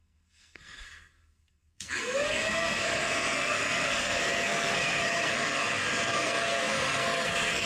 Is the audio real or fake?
fake